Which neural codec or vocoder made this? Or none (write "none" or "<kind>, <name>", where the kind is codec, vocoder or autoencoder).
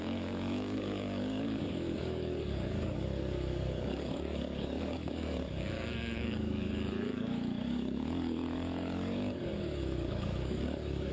codec, DAC